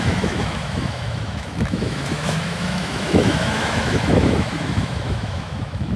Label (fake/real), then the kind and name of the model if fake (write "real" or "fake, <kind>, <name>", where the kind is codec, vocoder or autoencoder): fake, autoencoder, DAC-VAE